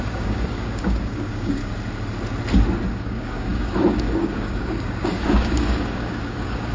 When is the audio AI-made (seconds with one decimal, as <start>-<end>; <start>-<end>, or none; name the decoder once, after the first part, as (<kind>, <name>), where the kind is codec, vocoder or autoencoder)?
0.0-1.6 (codec, DAC); 3.0-6.7